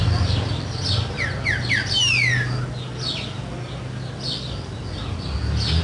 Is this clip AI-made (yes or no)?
no